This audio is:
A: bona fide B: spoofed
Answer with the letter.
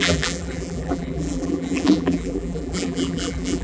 B